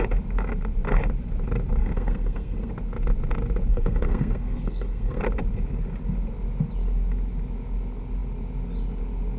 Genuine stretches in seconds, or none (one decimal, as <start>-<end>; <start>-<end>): 0.0-1.8; 2.7-3.7; 5.2-9.4